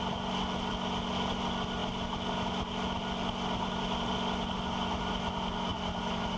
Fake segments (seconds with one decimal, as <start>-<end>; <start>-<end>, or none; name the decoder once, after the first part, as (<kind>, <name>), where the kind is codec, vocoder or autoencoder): none